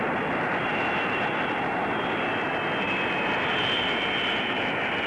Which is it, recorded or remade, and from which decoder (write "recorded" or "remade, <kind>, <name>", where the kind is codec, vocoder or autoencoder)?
remade, vocoder, BigVGAN v2